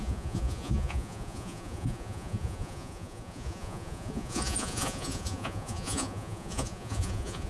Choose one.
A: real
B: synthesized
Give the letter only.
B